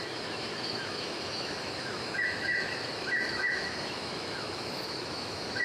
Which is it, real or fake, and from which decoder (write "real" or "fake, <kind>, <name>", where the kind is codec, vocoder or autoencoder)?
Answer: fake, autoencoder, DAC-VAE